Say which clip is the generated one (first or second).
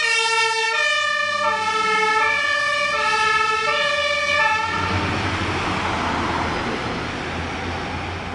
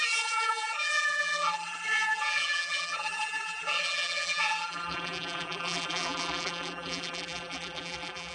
second